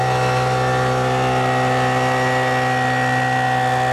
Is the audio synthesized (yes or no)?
no